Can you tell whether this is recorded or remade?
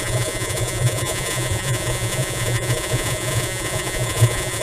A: remade